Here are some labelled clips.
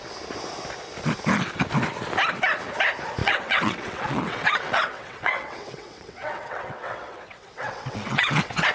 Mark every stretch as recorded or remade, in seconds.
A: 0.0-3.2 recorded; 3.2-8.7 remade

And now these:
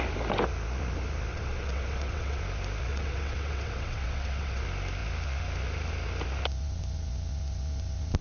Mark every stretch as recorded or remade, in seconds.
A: 0.0-1.3 recorded; 1.3-2.4 remade; 2.4-2.9 recorded; 2.9-4.6 remade; 4.6-8.2 recorded

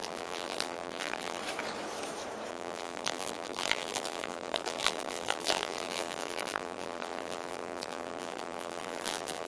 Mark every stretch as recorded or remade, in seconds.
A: 0.0-1.4 remade; 1.4-2.5 recorded; 2.5-9.5 remade

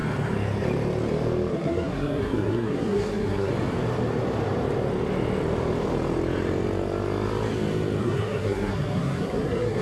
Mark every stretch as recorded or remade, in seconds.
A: 0.0-1.5 recorded; 1.5-3.5 remade; 3.5-8.0 recorded; 8.0-9.8 remade

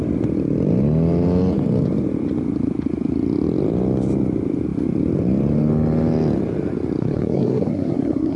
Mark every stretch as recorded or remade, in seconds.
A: 0.0-7.0 recorded; 7.0-8.4 remade